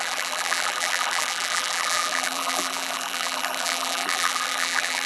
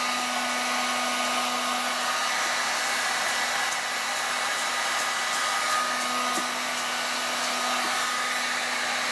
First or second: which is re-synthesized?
first